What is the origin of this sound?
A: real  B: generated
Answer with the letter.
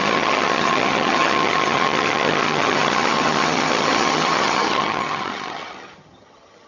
B